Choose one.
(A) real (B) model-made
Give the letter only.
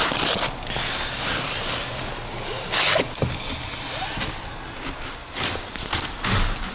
A